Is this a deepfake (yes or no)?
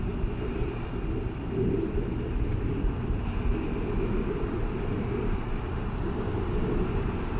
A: no